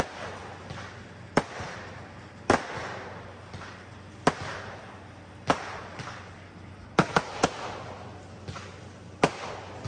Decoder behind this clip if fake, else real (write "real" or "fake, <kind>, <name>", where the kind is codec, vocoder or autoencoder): real